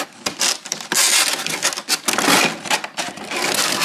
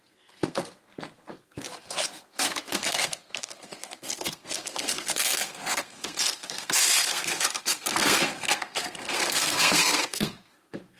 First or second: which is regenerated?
second